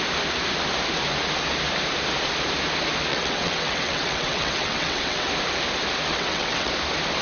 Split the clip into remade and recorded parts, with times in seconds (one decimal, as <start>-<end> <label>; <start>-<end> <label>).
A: 0.0-3.1 recorded; 3.1-5.3 remade; 5.3-6.1 recorded; 6.1-6.7 remade; 6.7-7.2 recorded